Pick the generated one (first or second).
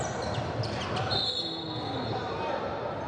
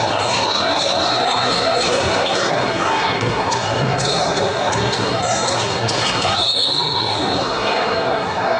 second